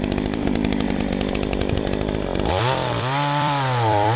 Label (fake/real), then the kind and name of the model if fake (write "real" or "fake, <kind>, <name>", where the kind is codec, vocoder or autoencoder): fake, vocoder, BigVGAN v2